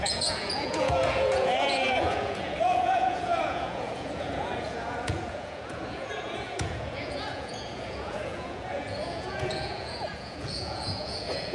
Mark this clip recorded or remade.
remade